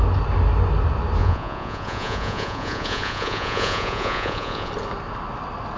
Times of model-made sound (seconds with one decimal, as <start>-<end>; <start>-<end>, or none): 1.2-4.7